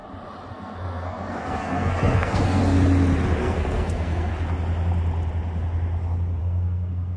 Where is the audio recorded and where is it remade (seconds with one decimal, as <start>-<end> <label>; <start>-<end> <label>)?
0.0-0.5 recorded; 0.5-2.6 remade; 2.6-3.4 recorded; 3.4-4.3 remade; 4.3-6.4 recorded; 6.4-7.2 remade